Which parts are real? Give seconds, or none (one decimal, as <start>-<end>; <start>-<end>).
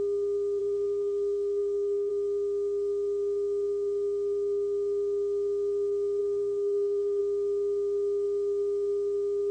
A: 0.0-0.6; 2.1-6.2; 7.2-9.5